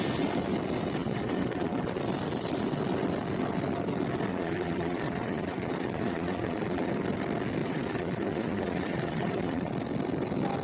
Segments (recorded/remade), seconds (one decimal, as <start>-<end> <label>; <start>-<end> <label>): 0.0-1.0 recorded; 1.0-2.0 remade; 2.0-4.3 recorded; 4.3-6.9 remade; 6.9-7.6 recorded; 7.6-9.7 remade; 9.7-10.6 recorded